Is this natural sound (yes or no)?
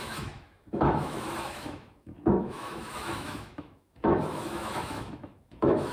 no